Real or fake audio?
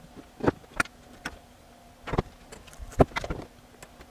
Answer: real